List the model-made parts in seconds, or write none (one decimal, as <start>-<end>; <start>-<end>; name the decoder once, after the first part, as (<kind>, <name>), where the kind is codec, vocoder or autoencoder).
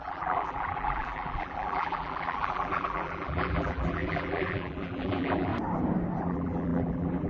0.0-5.5 (vocoder, BigVGAN v2); 6.2-7.3